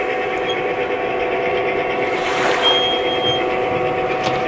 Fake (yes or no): no